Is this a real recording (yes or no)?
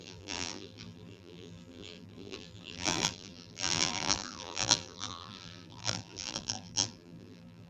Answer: no